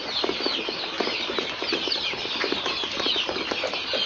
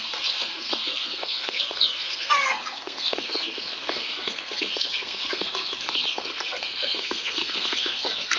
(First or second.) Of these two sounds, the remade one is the second